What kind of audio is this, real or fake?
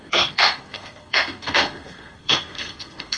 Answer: fake